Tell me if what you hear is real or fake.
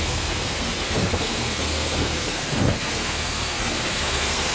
fake